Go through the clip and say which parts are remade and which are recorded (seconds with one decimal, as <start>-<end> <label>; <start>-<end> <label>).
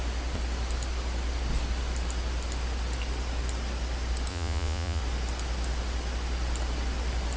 0.0-4.3 recorded; 4.3-5.0 remade; 5.0-7.4 recorded